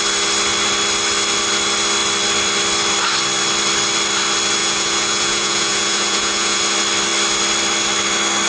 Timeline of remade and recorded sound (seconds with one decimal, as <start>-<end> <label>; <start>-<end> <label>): 0.0-4.6 recorded; 4.6-6.6 remade; 6.6-8.5 recorded

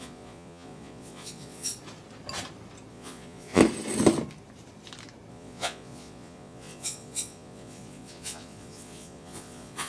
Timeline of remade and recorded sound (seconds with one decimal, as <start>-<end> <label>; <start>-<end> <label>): 0.0-1.7 remade; 1.7-2.9 recorded; 2.9-3.6 remade; 3.6-5.3 recorded; 5.3-9.9 remade

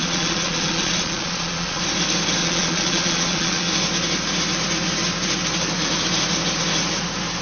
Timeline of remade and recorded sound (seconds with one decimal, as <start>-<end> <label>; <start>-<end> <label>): 0.0-1.8 remade; 1.8-2.4 recorded; 2.4-3.7 remade; 3.7-7.4 recorded